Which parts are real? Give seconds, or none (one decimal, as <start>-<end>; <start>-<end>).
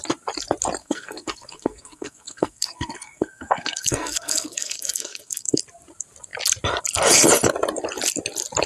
0.0-0.8; 5.6-8.7